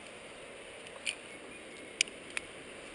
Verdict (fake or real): real